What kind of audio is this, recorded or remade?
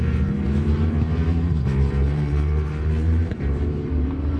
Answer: remade